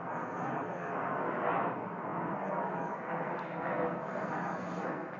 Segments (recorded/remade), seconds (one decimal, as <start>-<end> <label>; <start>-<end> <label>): 0.0-5.2 remade